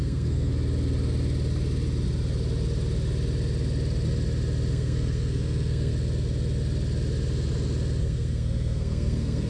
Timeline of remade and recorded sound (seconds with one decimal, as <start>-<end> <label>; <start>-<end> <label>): 0.0-0.5 remade; 0.5-4.7 recorded; 4.7-5.9 remade; 5.9-8.0 recorded; 8.0-9.5 remade